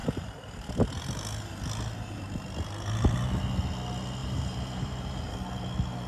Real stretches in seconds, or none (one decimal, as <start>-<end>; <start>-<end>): 0.7-4.2; 5.3-6.1